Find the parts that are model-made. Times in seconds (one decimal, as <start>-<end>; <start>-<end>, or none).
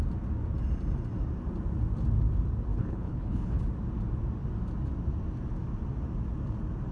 2.7-3.6